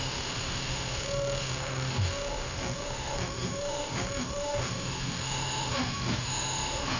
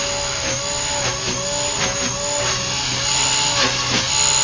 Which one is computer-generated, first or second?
first